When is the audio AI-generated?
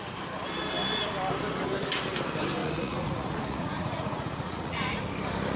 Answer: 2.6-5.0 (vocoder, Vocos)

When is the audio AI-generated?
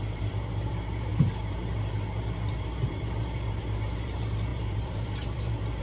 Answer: 0.0-5.8 (vocoder, BigVGAN v2)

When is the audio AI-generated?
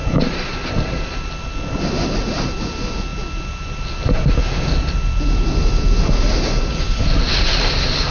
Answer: none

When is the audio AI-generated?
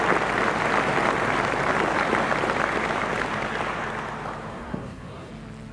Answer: 4.5-5.3 (codec, SNAC)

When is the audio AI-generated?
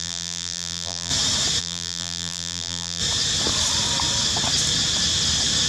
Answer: 0.0-1.1 (vocoder, BigVGAN v2); 1.6-3.0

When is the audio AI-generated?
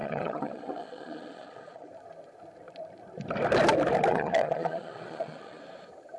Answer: 0.0-1.9 (vocoder, Vocos); 4.1-5.6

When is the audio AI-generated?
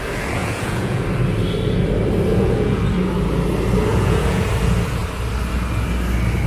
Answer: 0.4-1.0 (vocoder, Vocos); 2.3-2.8; 3.9-4.4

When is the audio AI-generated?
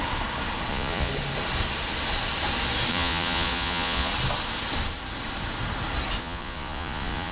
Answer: 0.7-1.1 (vocoder, Vocos); 2.9-4.1; 6.2-7.3